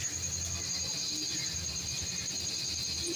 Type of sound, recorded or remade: recorded